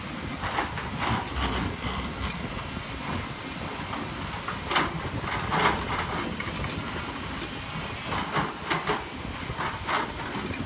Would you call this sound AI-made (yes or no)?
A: no